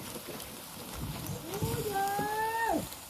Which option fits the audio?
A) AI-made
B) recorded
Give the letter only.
B